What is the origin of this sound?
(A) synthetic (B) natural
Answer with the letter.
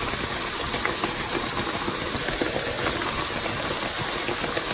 B